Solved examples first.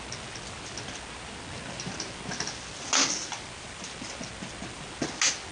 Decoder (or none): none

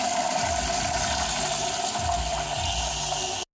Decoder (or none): none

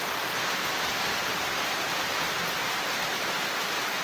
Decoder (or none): none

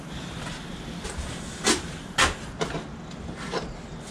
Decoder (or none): none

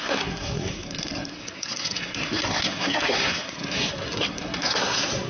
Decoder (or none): codec, SNAC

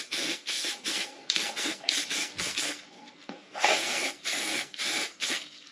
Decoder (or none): codec, SNAC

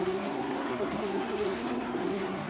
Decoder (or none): codec, SNAC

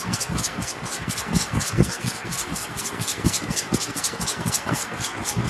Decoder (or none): codec, SNAC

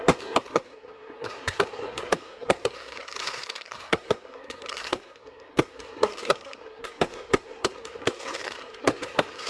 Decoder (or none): codec, SNAC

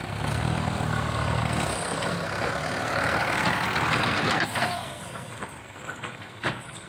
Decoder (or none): codec, SNAC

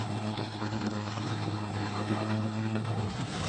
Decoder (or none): codec, SNAC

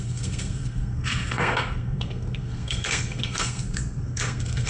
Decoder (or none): codec, SNAC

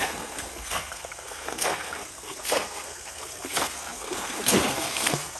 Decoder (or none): codec, SNAC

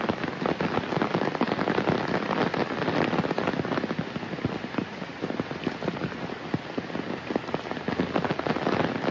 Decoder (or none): none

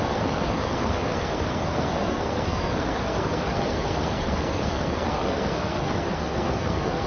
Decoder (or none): codec, SNAC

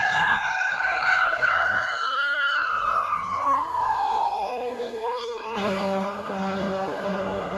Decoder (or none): codec, SNAC